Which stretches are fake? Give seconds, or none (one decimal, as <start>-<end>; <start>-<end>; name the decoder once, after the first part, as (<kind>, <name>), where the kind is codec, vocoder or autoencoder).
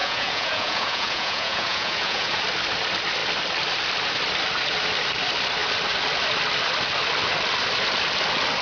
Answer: 0.0-2.4 (vocoder, Vocos)